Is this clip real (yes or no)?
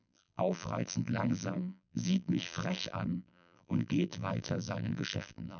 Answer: no